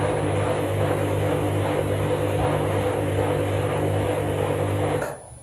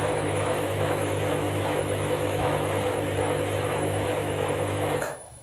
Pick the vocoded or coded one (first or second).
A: second